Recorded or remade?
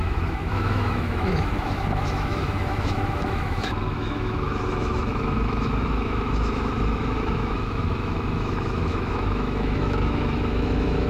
remade